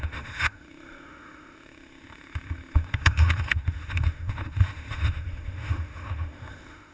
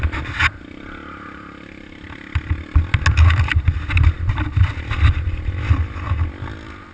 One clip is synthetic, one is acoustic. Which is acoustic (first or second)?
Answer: second